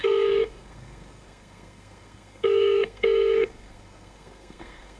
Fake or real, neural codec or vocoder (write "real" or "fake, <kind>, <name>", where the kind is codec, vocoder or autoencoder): fake, codec, SNAC